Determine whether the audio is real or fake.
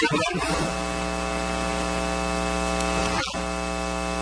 real